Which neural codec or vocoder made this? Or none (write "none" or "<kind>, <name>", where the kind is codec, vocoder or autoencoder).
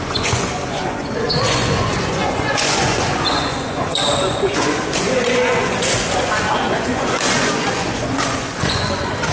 vocoder, Vocos